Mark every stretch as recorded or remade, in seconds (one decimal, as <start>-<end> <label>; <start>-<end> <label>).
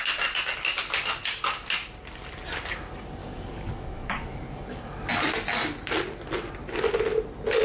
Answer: 0.0-3.2 recorded; 3.2-5.1 remade; 5.1-7.6 recorded